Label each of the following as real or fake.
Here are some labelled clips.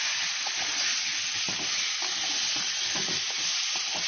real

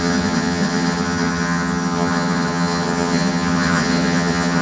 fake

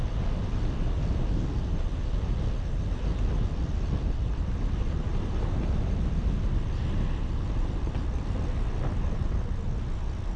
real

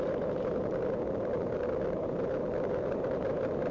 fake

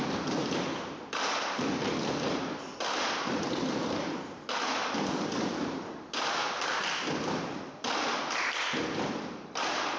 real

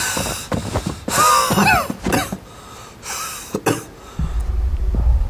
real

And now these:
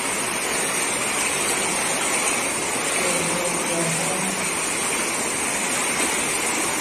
real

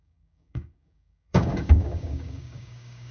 fake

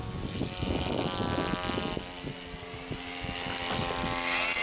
real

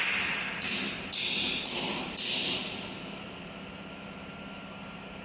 real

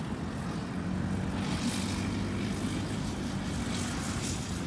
real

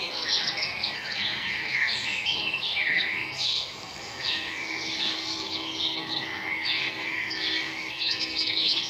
fake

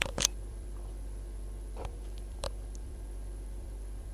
fake